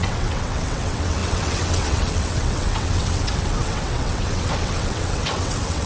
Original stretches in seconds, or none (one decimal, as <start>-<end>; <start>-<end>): none